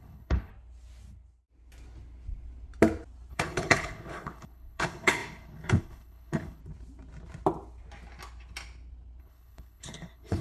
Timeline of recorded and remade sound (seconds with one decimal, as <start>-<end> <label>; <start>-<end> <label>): 0.0-0.5 remade; 0.5-3.3 recorded; 3.3-6.6 remade; 6.6-9.2 recorded; 9.2-10.4 remade